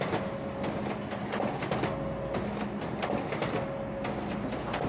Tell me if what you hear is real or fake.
real